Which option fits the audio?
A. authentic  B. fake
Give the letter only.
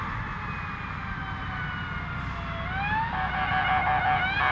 A